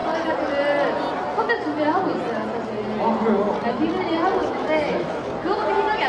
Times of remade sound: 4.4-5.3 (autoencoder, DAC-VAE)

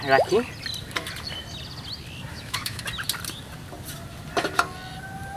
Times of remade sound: 2.3-2.8 (autoencoder, DAC-VAE)

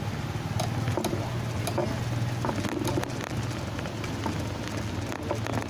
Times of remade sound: none

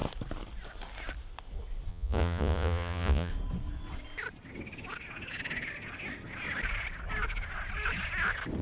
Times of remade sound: 1.9-3.3 (vocoder, Vocos)

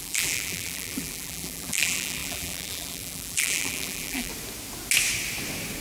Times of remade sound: 0.0-4.3 (vocoder, BigVGAN v2)

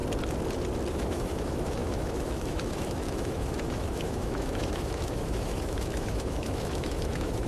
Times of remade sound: 0.9-7.5 (autoencoder, DAC-VAE)

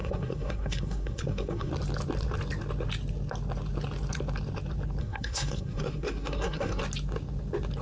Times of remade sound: 0.0-1.7 (codec, SNAC); 5.0-6.8